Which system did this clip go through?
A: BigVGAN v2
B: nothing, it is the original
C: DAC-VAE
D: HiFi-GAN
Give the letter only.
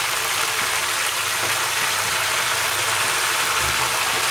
B